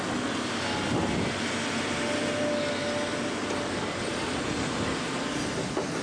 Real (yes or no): yes